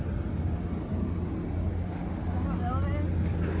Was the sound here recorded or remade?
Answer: recorded